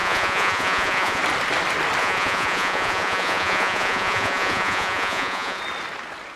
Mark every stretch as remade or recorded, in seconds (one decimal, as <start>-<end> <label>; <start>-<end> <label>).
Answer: 0.0-1.2 remade; 1.2-2.0 recorded; 2.0-5.6 remade; 5.6-6.4 recorded